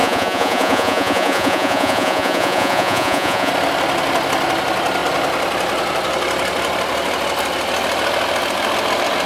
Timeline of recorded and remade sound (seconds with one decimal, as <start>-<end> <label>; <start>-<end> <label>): 0.0-3.5 remade; 3.5-9.3 recorded